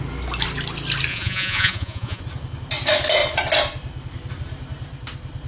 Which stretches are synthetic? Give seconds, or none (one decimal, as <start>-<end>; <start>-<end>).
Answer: 1.1-2.2